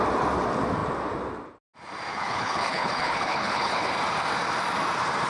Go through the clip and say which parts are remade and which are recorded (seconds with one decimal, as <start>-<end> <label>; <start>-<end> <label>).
0.0-2.1 recorded; 2.1-3.9 remade; 3.9-5.3 recorded